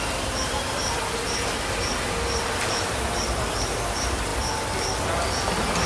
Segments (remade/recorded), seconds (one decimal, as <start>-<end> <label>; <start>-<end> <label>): 0.0-5.9 recorded